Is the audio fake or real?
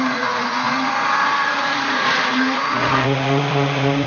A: fake